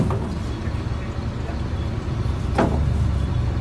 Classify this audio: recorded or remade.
recorded